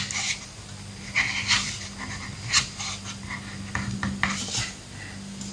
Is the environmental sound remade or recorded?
recorded